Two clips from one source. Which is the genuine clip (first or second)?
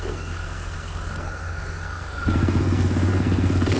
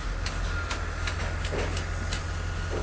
second